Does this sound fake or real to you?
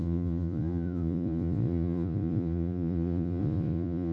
fake